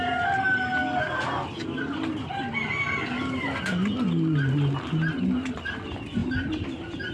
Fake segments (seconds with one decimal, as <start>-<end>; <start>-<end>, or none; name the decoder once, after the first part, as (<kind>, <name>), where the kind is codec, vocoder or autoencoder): none